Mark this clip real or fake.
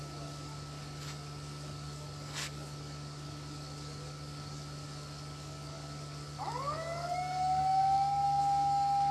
fake